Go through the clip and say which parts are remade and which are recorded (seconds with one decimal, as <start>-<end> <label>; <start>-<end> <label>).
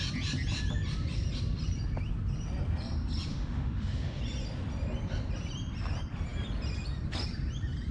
0.0-3.3 recorded; 3.3-4.2 remade; 4.2-7.9 recorded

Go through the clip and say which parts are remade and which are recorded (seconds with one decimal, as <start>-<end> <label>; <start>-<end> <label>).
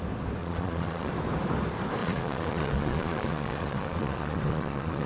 0.0-0.4 recorded; 0.4-1.1 remade; 1.1-2.0 recorded; 2.0-5.1 remade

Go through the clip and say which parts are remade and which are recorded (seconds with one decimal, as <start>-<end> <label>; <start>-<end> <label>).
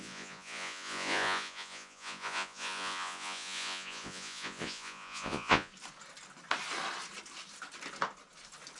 0.0-5.7 remade; 5.7-8.8 recorded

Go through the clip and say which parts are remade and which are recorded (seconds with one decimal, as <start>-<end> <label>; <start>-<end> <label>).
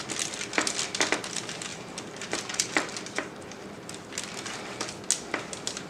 0.0-1.7 recorded; 1.7-3.6 remade; 3.6-5.9 recorded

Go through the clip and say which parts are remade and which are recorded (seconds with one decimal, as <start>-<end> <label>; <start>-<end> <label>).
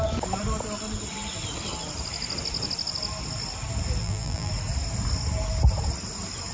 0.0-4.0 recorded; 4.0-4.5 remade; 4.5-6.5 recorded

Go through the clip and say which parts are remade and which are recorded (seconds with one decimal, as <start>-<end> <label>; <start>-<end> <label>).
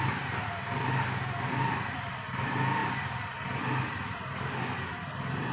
0.0-5.5 recorded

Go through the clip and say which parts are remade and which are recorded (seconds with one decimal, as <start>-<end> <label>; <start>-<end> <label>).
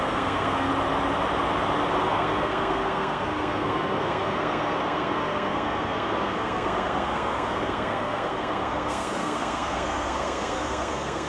0.0-0.7 remade; 0.7-2.0 recorded; 2.0-11.3 remade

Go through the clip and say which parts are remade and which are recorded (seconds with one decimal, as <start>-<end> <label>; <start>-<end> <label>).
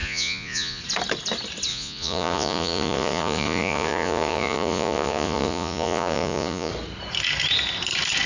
0.0-0.8 remade; 0.8-1.7 recorded; 1.7-6.7 remade; 6.7-8.3 recorded